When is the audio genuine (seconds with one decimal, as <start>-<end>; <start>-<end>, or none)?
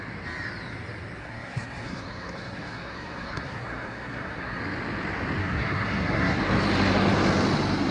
0.0-1.2; 4.6-5.4; 6.4-7.9